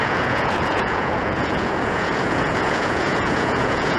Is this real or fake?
fake